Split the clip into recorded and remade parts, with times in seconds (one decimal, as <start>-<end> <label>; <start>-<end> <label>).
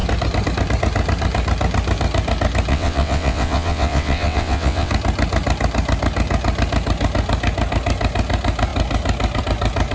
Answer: 0.0-2.7 recorded; 2.7-4.9 remade; 4.9-9.9 recorded